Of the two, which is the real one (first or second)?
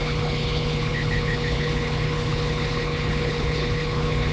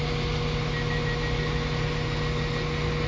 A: second